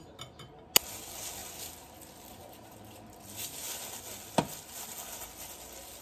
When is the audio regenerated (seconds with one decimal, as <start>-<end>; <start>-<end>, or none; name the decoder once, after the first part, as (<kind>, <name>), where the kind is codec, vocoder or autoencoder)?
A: none